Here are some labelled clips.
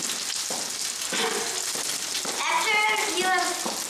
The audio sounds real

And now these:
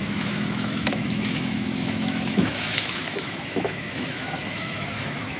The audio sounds fake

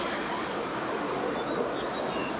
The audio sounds real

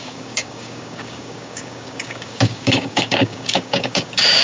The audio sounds fake